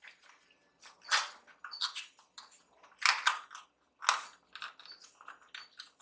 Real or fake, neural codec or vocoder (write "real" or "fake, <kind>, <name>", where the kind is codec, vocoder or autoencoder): real